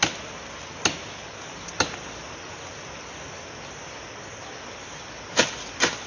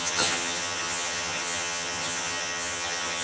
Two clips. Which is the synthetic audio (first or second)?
second